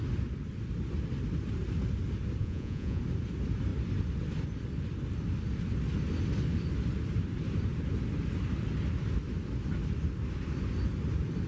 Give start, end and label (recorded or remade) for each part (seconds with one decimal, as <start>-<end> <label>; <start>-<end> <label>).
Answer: 0.0-2.4 recorded; 2.4-3.0 remade; 3.0-11.5 recorded